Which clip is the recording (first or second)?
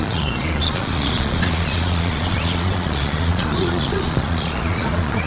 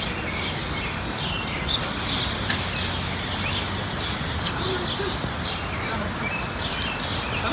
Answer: second